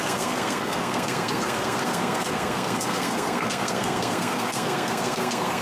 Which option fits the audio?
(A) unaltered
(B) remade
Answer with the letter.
B